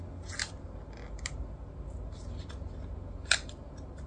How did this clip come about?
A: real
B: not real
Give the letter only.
A